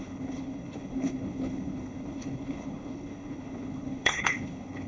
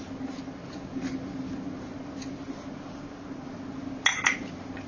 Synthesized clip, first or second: first